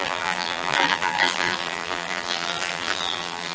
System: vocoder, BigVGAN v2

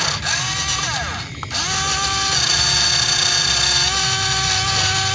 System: none